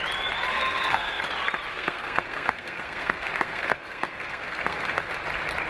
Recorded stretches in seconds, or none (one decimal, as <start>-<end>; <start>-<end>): 0.0-0.5; 1.2-1.7; 5.1-5.7